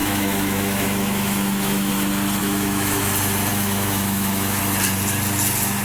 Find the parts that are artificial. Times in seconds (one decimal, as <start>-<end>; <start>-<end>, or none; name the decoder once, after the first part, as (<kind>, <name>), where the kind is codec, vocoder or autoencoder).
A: 0.0-1.9 (autoencoder, DAC-VAE); 2.4-3.0; 3.5-4.6